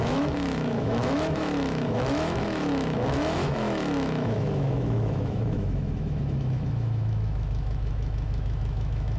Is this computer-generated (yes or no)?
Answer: yes